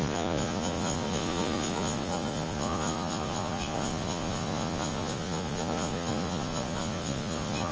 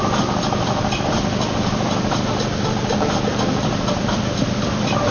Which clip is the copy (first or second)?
first